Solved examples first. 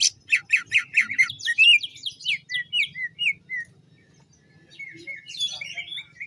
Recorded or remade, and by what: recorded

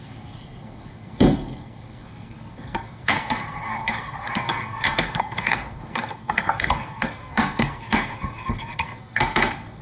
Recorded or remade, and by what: remade, codec, SNAC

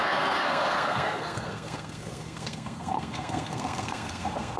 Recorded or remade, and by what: remade, codec, SNAC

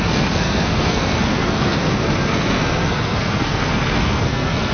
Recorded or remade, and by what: remade, codec, SNAC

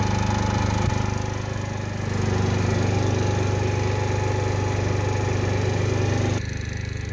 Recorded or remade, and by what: recorded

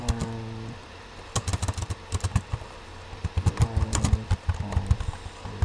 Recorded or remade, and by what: recorded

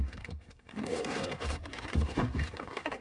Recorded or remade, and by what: remade, codec, SNAC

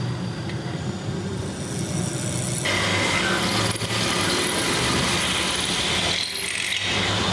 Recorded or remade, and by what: recorded